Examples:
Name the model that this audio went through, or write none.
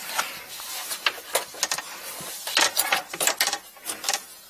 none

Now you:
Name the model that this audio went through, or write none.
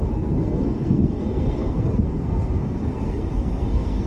codec, SNAC